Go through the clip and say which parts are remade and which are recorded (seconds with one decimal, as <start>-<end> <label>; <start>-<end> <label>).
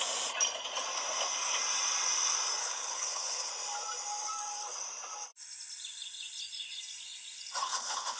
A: 0.0-2.6 recorded; 2.6-3.5 remade; 3.5-7.6 recorded; 7.6-8.2 remade